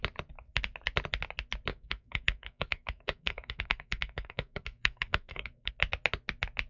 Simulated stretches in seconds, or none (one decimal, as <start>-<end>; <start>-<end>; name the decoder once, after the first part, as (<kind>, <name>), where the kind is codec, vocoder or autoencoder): 1.7-5.7 (codec, SNAC)